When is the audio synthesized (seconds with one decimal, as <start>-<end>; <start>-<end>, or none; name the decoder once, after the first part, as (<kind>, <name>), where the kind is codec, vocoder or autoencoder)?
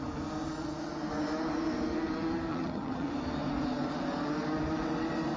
2.5-3.1 (vocoder, HiFi-GAN)